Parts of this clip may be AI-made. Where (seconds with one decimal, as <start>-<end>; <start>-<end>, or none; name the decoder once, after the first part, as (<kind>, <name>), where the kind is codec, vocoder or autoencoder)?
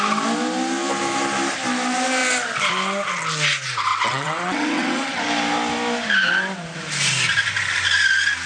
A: 3.9-5.2 (vocoder, WaveNeXt)